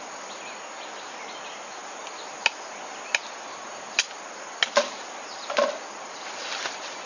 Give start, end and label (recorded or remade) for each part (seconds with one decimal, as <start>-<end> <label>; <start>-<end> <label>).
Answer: 0.0-7.1 recorded